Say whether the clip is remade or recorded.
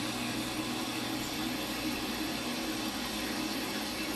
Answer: recorded